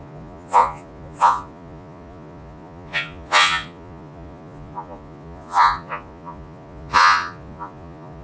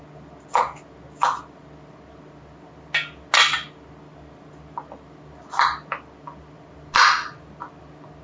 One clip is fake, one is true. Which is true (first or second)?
second